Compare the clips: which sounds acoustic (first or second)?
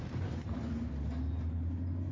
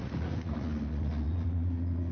first